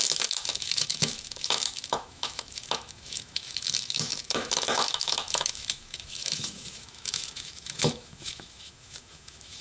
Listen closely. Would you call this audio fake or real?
fake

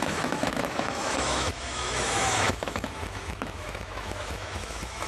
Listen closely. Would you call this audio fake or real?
fake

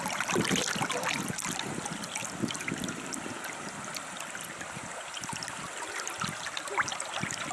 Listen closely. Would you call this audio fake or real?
real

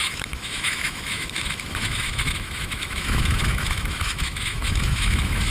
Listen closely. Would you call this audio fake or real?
fake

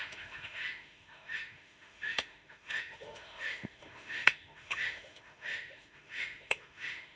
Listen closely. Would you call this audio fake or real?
fake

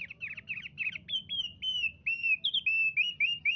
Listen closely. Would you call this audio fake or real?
real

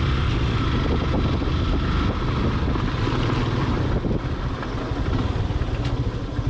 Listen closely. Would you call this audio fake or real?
real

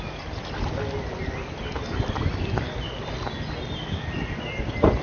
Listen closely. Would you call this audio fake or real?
real